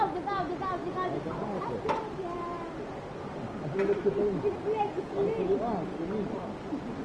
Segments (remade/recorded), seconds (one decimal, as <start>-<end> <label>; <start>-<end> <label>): 0.0-7.0 recorded